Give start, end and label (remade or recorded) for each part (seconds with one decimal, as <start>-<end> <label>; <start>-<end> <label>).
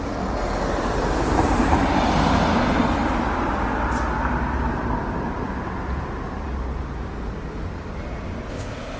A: 0.0-8.5 recorded; 8.5-9.0 remade